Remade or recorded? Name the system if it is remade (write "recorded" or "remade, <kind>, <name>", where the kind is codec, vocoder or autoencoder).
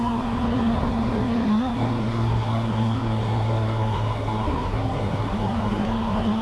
remade, codec, SNAC